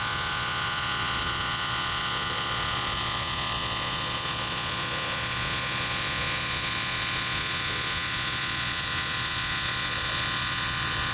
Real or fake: fake